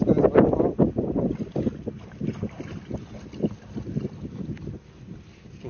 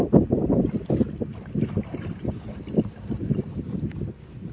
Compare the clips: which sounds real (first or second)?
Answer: first